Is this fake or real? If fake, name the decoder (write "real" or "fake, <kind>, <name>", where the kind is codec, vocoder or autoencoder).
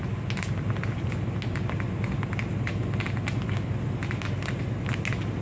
real